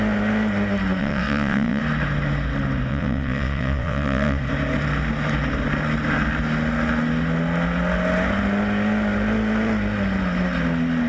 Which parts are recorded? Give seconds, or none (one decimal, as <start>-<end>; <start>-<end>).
0.0-1.0; 1.8-2.9; 4.4-11.1